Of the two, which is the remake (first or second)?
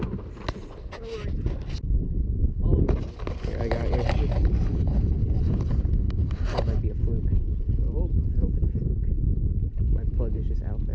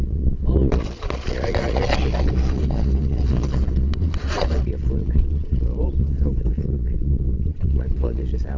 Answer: second